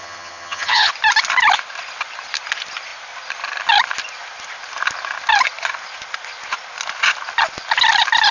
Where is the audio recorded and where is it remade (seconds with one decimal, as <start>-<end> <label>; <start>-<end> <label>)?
0.0-0.9 remade; 0.9-8.3 recorded